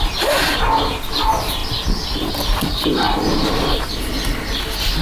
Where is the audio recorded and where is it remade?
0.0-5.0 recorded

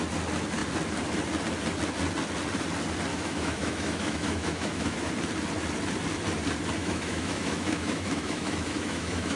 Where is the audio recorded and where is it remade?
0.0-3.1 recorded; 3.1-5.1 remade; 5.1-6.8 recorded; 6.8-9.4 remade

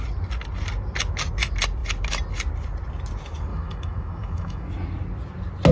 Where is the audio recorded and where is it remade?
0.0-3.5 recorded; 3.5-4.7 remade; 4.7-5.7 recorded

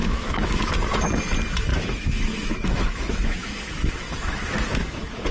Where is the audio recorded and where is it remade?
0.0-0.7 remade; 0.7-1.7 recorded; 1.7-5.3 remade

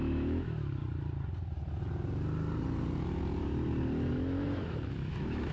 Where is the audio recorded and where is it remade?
0.0-0.8 remade; 0.8-4.1 recorded; 4.1-5.5 remade

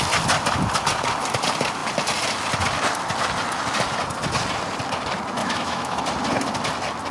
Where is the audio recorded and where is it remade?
0.0-5.4 recorded; 5.4-6.0 remade; 6.0-7.1 recorded

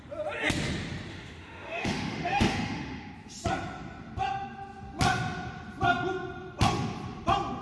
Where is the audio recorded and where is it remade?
0.0-1.1 recorded; 1.1-3.1 remade; 3.1-7.6 recorded